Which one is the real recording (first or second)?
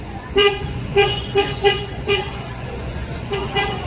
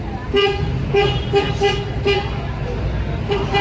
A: second